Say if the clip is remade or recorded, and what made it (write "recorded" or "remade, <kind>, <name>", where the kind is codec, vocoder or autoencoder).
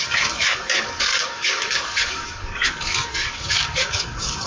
remade, codec, DAC